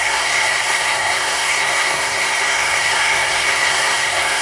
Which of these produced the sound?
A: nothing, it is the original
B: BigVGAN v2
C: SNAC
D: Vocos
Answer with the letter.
C